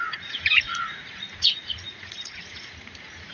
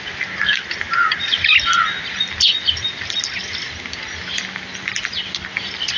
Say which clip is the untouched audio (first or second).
second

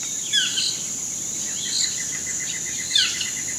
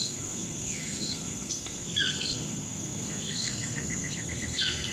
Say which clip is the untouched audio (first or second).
first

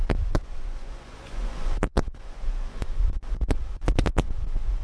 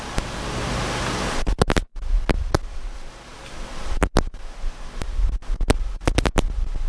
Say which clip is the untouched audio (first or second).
second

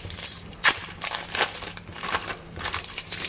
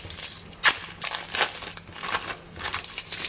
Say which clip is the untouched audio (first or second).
second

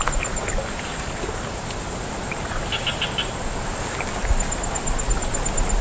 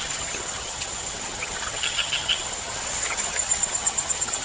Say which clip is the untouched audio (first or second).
first